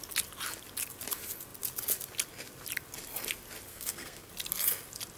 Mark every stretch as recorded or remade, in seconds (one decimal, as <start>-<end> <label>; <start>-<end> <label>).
0.0-3.7 recorded; 3.7-4.3 remade; 4.3-5.2 recorded

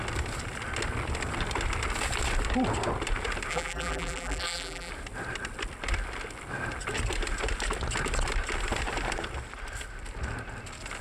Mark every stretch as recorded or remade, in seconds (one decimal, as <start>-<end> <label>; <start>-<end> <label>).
0.0-3.5 recorded; 3.5-4.9 remade; 4.9-11.0 recorded

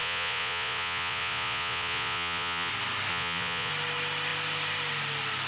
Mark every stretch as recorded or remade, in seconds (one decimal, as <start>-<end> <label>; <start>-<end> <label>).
0.0-2.7 remade; 2.7-3.1 recorded; 3.1-3.7 remade; 3.7-5.5 recorded

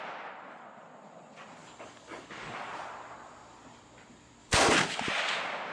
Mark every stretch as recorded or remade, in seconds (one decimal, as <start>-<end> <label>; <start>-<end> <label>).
0.0-1.6 recorded; 1.6-2.7 remade; 2.7-4.4 recorded; 4.4-5.0 remade; 5.0-5.7 recorded

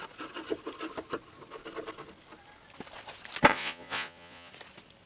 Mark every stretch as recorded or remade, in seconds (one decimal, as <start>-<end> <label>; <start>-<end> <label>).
0.0-3.5 recorded; 3.5-4.5 remade; 4.5-5.1 recorded

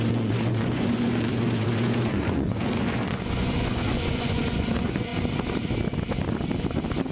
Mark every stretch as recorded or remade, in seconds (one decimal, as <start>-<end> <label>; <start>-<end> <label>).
0.0-5.1 remade; 5.1-7.1 recorded

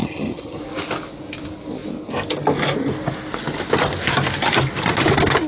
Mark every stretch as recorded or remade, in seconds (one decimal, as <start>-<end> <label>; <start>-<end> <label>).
0.0-0.6 remade; 0.6-5.5 recorded